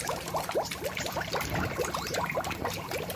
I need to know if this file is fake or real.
fake